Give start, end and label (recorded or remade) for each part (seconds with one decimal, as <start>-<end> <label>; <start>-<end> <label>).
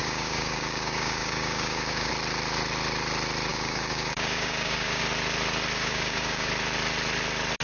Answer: 0.0-2.1 remade; 2.1-3.5 recorded; 3.5-5.0 remade; 5.0-5.8 recorded; 5.8-6.5 remade; 6.5-7.6 recorded